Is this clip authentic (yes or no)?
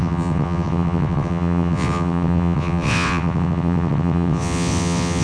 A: no